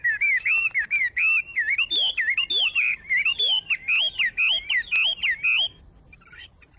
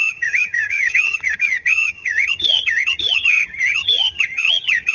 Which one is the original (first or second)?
first